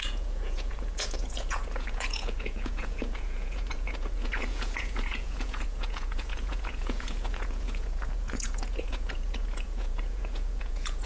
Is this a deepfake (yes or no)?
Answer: yes